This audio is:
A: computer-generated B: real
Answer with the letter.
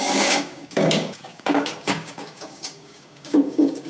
A